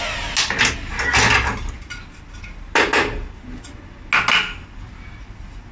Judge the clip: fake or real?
real